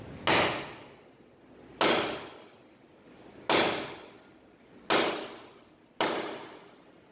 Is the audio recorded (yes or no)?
yes